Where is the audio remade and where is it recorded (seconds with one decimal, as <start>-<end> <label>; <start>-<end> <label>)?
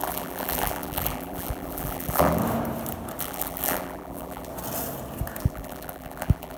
0.0-2.4 remade; 2.4-3.2 recorded; 3.2-4.5 remade; 4.5-5.4 recorded; 5.4-6.6 remade